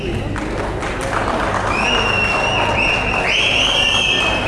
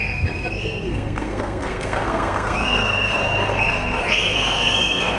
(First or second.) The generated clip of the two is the second